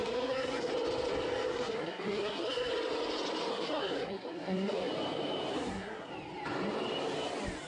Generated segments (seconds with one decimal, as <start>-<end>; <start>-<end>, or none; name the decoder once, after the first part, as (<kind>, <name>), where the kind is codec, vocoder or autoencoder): 0.0-0.7 (codec, SNAC); 1.5-2.7; 3.5-4.9; 5.5-6.1